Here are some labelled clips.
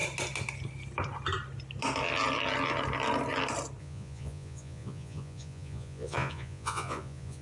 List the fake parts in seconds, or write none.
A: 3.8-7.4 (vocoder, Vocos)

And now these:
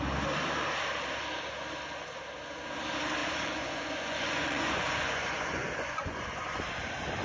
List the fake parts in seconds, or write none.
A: 3.2-6.6 (vocoder, Vocos)

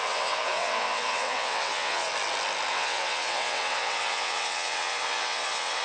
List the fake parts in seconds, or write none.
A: 0.0-2.1 (vocoder, WaveNeXt); 2.7-5.8

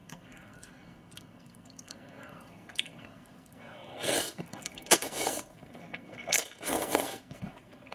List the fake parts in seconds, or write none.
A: 0.0-7.9 (codec, SNAC)

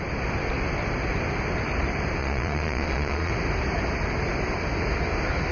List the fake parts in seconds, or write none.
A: 2.2-3.3 (vocoder, Vocos)